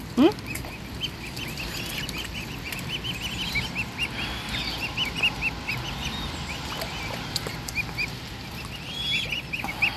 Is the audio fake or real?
real